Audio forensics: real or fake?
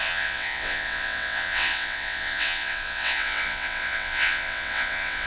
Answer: fake